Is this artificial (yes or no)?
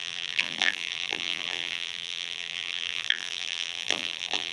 yes